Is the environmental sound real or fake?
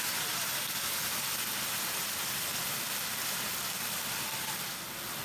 real